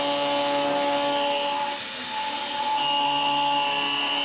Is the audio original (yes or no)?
yes